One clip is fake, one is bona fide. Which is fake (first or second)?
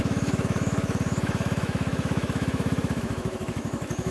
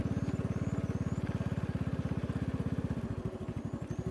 first